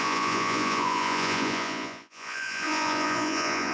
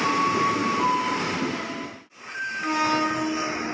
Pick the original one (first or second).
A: second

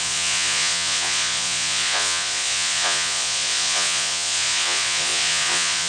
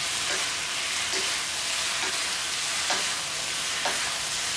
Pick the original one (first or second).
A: second